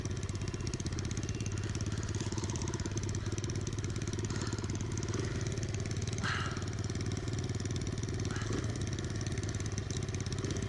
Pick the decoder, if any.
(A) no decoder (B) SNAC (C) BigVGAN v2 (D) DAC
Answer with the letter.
A